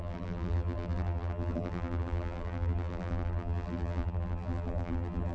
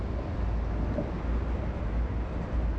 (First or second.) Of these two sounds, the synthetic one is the first